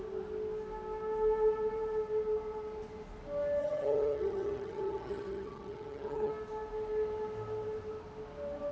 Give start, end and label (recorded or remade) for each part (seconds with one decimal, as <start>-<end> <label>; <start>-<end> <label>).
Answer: 0.0-3.6 recorded; 3.6-6.3 remade; 6.3-8.7 recorded